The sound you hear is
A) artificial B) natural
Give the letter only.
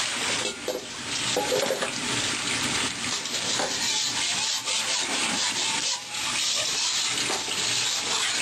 B